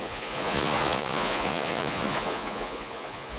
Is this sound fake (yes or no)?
yes